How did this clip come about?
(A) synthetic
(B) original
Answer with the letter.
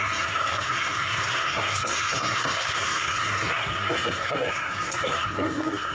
A